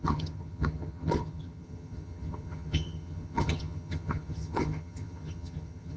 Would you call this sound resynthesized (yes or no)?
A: yes